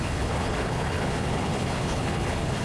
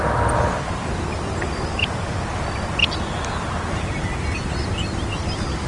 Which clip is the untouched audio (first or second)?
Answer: second